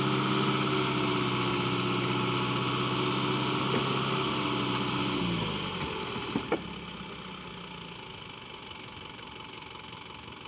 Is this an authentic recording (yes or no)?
yes